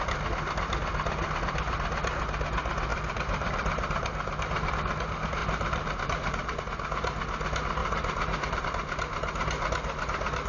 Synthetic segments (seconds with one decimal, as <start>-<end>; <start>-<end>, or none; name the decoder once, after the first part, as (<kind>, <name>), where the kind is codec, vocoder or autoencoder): 2.9-4.7 (vocoder, BigVGAN v2); 5.4-6.6; 7.8-8.6